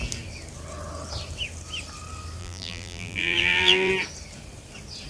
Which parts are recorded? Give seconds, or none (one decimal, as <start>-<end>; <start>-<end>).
0.0-2.4; 3.9-5.1